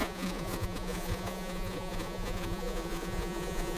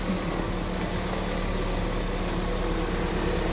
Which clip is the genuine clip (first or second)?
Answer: second